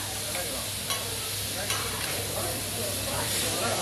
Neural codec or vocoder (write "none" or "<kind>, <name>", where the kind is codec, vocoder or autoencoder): vocoder, BigVGAN v2